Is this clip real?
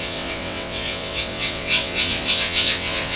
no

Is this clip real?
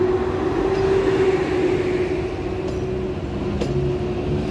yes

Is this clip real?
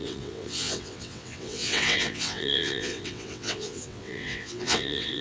no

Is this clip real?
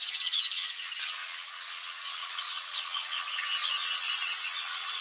no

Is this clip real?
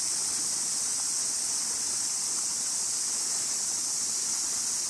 yes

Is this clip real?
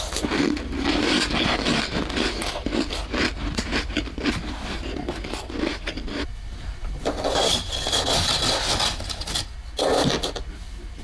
yes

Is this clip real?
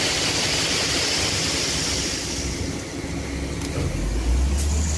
yes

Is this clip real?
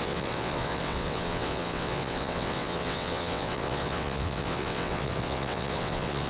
no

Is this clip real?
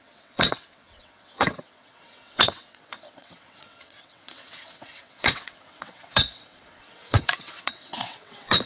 no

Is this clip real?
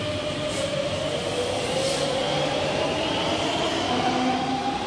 yes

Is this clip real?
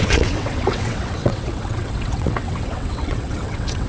no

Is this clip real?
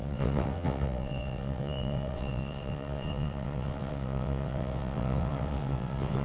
no